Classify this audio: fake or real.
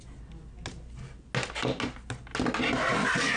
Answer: real